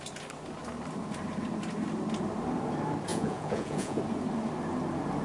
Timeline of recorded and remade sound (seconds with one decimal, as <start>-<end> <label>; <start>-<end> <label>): 0.0-3.1 recorded; 3.1-4.0 remade; 4.0-5.2 recorded